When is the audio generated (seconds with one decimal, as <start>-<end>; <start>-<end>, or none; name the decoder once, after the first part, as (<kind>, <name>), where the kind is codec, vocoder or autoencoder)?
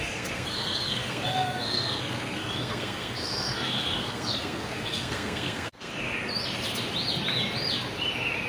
0.0-5.9 (codec, SNAC)